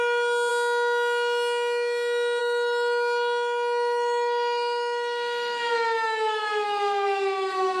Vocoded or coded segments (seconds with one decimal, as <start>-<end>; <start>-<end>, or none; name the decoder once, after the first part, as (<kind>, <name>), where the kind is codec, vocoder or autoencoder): 0.0-0.5 (autoencoder, DAC-VAE); 2.4-7.8